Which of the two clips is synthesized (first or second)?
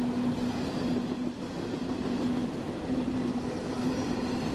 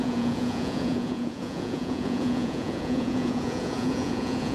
second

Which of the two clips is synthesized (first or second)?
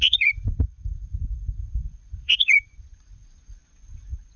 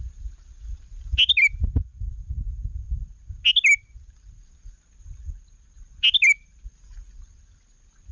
first